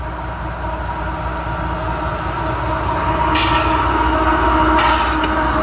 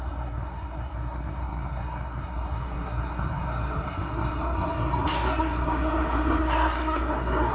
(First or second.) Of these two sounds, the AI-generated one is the second